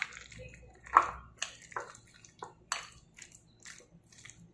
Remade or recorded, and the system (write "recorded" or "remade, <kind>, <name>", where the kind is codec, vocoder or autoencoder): recorded